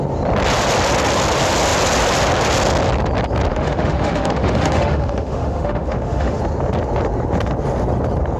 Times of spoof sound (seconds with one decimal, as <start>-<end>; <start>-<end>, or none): 3.5-6.4